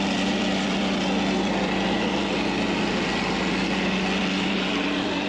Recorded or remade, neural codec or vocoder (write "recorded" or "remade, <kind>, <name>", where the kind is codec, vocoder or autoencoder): remade, vocoder, BigVGAN v2